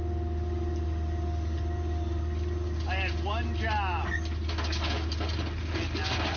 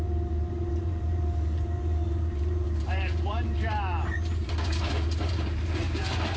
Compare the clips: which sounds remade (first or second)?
second